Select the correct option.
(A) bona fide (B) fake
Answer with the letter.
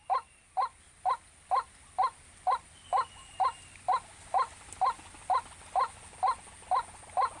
A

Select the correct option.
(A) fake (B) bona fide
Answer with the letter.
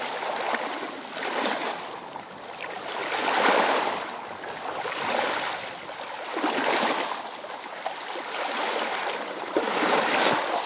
B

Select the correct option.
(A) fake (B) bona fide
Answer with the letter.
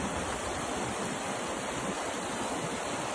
A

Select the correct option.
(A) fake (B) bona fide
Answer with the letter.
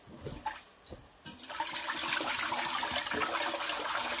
B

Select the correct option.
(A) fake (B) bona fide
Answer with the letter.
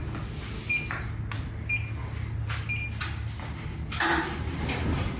B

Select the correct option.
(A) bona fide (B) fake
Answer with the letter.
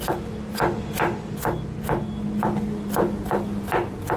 A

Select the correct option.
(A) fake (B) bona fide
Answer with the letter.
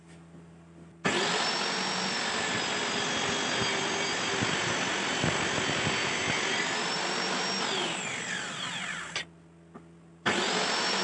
B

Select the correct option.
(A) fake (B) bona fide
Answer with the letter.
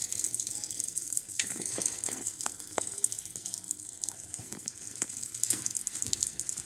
A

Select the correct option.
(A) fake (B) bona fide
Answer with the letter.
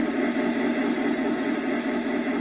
B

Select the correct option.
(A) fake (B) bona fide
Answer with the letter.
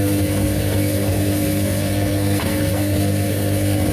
A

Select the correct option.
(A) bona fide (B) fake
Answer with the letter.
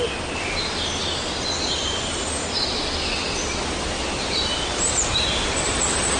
A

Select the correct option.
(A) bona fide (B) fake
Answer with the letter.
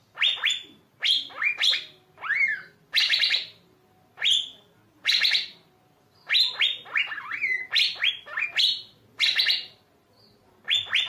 A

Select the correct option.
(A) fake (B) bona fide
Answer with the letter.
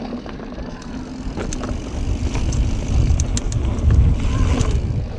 B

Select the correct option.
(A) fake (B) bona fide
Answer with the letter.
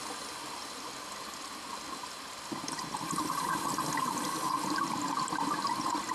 B